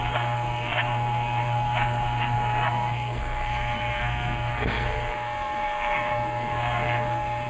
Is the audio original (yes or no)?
no